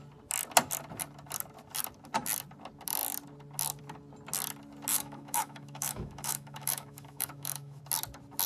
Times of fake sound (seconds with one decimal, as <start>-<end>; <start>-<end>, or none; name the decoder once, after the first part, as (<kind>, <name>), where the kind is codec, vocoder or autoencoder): 4.9-7.8 (autoencoder, DAC-VAE)